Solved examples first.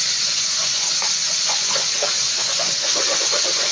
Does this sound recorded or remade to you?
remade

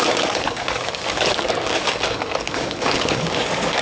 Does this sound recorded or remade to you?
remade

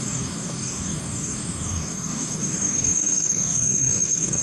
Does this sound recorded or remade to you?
remade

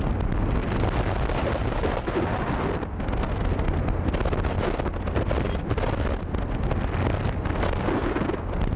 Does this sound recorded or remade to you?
recorded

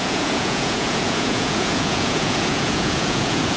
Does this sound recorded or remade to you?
remade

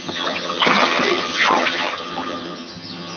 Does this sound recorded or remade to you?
remade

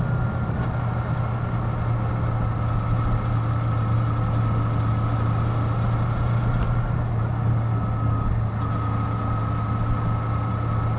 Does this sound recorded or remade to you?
recorded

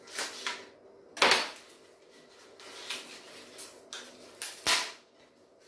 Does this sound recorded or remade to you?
recorded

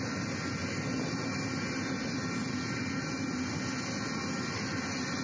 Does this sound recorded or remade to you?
recorded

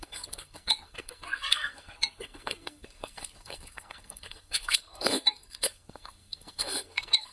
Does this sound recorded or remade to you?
remade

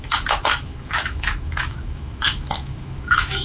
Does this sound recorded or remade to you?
remade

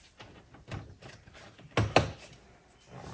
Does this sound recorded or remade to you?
recorded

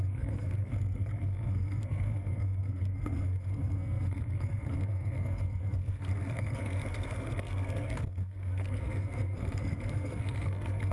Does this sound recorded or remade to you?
remade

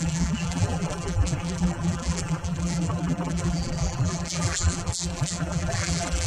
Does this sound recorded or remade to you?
remade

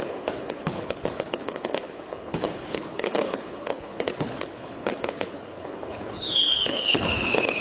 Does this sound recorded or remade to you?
remade